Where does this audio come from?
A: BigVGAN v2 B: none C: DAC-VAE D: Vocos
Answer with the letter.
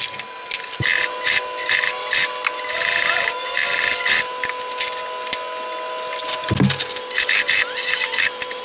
B